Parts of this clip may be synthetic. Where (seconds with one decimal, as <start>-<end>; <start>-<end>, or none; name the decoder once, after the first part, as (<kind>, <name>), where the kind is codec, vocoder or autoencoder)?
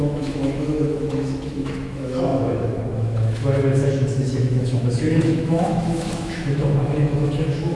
0.0-7.7 (autoencoder, DAC-VAE)